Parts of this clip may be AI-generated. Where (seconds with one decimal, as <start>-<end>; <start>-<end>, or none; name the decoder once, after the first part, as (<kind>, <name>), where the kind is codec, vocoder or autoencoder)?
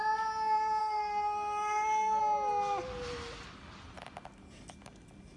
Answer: 0.8-2.2 (codec, SNAC)